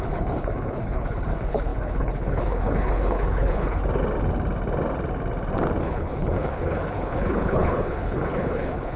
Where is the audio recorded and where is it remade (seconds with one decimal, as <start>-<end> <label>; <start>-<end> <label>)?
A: 0.0-3.8 remade; 3.8-5.8 recorded; 5.8-9.0 remade